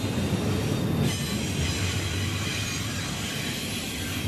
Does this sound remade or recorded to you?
recorded